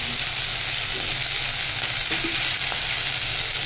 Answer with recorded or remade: recorded